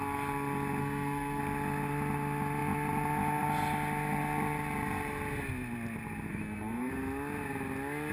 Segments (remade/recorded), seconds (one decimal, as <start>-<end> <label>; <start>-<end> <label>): 0.0-0.8 recorded; 0.8-1.4 remade; 1.4-6.3 recorded; 6.3-6.9 remade; 6.9-8.1 recorded